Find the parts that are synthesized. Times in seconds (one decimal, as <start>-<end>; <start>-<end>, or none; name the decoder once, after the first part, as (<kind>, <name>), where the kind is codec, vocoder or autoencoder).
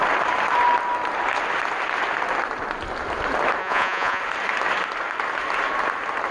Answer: 3.6-4.2 (vocoder, Vocos)